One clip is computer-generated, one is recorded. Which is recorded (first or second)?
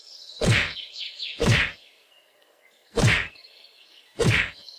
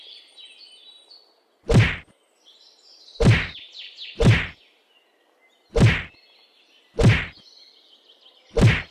second